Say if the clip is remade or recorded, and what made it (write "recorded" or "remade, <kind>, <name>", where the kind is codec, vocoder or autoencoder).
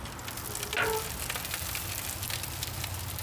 recorded